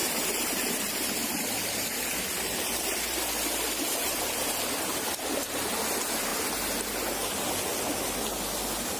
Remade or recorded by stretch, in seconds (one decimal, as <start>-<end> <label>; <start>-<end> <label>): 0.0-0.7 remade; 0.7-1.2 recorded; 1.2-4.7 remade; 4.7-9.0 recorded